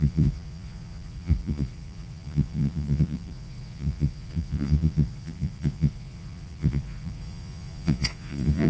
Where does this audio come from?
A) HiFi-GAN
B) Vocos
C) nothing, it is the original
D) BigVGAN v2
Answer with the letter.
B